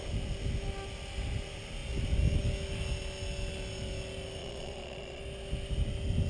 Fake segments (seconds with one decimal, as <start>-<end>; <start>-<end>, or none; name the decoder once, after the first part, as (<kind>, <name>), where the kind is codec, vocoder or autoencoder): 4.4-5.2 (vocoder, Vocos)